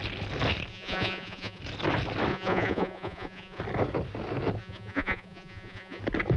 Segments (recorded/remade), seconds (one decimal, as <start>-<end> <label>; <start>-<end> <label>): 0.0-0.7 recorded; 0.7-1.6 remade; 1.6-2.3 recorded; 2.3-3.6 remade; 3.6-4.6 recorded; 4.6-6.0 remade; 6.0-6.4 recorded